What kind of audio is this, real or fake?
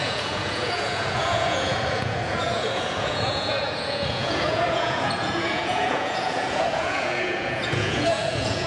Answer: fake